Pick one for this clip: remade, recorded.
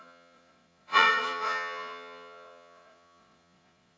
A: remade